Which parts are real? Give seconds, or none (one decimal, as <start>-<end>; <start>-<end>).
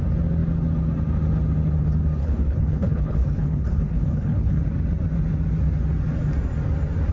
0.0-2.2; 4.6-7.1